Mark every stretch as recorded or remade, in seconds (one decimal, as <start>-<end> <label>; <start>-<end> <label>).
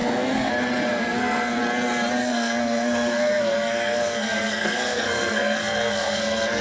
0.0-0.5 remade; 0.5-0.9 recorded; 0.9-1.6 remade; 1.6-2.2 recorded; 2.2-6.6 remade